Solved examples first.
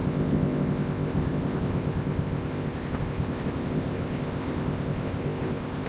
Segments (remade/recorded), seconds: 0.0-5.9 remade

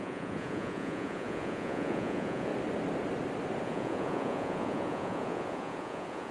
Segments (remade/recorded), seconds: 0.0-2.5 remade; 2.5-3.6 recorded; 3.6-6.3 remade

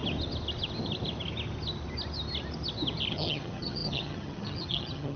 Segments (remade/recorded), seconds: 0.0-3.1 recorded; 3.1-5.2 remade

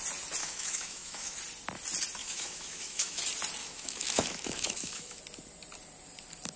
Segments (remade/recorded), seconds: 0.0-0.4 recorded; 0.4-1.4 remade; 1.4-2.2 recorded; 2.2-3.2 remade; 3.2-3.6 recorded; 3.6-5.2 remade; 5.2-6.6 recorded